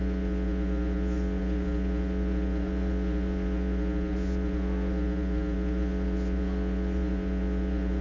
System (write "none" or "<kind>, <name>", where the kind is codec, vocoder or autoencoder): vocoder, Vocos